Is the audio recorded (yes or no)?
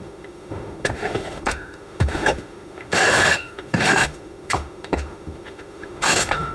no